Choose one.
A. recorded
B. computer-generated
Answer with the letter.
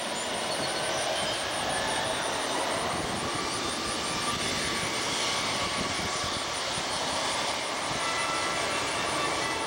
A